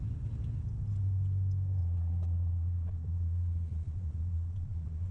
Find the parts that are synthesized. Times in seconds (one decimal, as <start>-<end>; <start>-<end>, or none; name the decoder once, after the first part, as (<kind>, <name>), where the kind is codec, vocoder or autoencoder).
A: 1.8-5.1 (vocoder, Vocos)